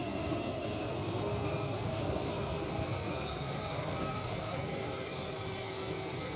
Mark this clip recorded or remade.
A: remade